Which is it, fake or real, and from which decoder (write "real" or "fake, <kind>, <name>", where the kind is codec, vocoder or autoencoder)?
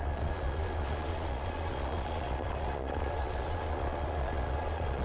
fake, vocoder, Vocos